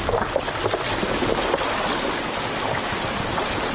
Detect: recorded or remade recorded